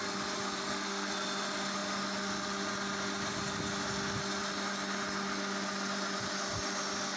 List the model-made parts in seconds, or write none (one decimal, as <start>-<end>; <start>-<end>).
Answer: 0.6-1.1